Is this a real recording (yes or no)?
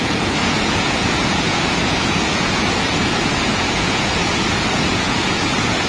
no